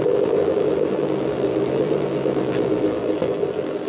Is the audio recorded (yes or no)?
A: no